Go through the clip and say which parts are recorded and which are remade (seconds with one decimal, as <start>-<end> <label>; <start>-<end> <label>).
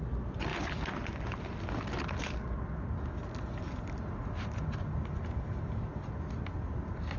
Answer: 0.0-7.2 recorded